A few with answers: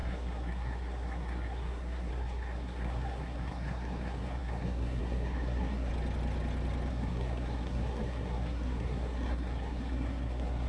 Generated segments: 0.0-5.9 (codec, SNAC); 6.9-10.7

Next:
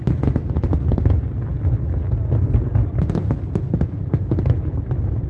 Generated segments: none